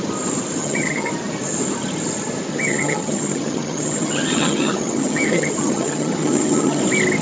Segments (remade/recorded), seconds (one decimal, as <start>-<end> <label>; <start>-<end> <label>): 0.0-0.6 recorded; 0.6-1.1 remade; 1.1-2.5 recorded; 2.5-6.8 remade; 6.8-7.2 recorded